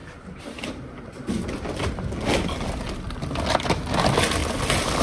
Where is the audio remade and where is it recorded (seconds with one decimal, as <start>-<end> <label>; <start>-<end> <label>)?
0.0-3.0 remade; 3.0-4.4 recorded; 4.4-5.0 remade